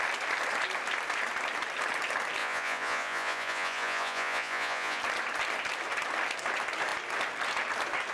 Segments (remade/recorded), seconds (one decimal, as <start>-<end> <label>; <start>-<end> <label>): 0.0-2.4 recorded; 2.4-5.0 remade; 5.0-8.1 recorded